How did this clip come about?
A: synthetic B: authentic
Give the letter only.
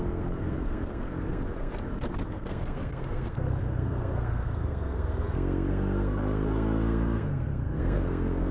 A